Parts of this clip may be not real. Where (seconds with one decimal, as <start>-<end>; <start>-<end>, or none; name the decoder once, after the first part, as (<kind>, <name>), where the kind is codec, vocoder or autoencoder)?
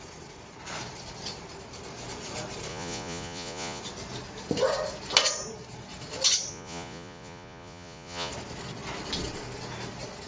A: 2.7-3.8 (vocoder, Vocos); 6.5-8.3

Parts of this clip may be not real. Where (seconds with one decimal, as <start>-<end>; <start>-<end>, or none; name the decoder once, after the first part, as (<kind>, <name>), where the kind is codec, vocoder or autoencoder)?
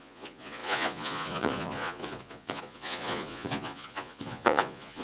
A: 0.0-5.0 (vocoder, Vocos)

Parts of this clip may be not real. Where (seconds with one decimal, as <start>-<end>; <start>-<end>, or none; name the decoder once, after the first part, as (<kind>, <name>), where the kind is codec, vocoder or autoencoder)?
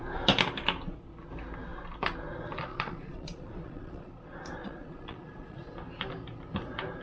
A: 2.7-4.1 (vocoder, Vocos); 4.6-5.7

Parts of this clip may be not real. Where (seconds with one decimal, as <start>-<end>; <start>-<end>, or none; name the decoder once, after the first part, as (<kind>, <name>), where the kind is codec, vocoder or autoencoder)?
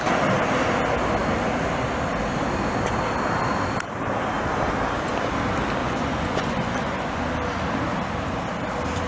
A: 5.8-7.2 (vocoder, Vocos)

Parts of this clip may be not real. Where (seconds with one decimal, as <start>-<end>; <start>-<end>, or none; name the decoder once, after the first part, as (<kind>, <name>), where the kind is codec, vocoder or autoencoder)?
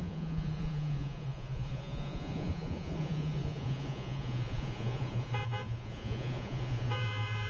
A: 0.0-7.5 (vocoder, Vocos)